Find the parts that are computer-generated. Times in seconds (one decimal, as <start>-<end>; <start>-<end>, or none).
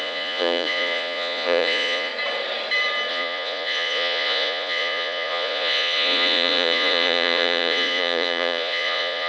0.0-2.1; 3.1-9.3